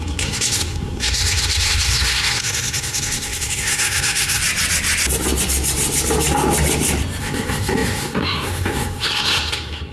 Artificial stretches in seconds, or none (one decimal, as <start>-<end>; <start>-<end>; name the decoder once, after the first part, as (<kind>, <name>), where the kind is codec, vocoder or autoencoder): 0.0-4.4 (codec, SNAC); 7.2-9.9